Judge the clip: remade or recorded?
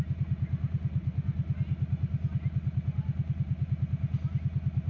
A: recorded